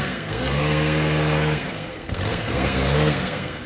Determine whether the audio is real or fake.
fake